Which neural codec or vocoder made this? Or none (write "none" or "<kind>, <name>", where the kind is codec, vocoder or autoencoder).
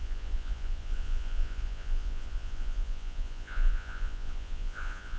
vocoder, Vocos